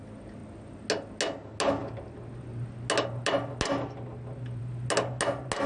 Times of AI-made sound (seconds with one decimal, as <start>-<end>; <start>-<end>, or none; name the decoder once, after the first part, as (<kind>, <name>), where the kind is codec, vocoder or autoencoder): none